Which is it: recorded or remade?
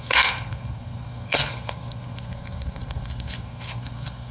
remade